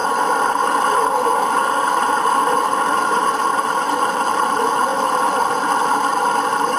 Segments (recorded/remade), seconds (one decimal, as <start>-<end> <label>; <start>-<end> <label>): 0.0-4.0 remade; 4.0-4.9 recorded; 4.9-5.9 remade; 5.9-6.8 recorded